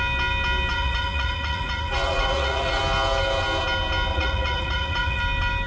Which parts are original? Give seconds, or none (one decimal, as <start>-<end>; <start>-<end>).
0.0-0.7; 2.8-4.1; 5.2-5.7